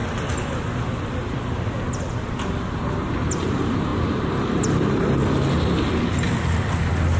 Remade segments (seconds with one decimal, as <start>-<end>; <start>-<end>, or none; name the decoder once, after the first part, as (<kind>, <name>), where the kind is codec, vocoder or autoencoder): none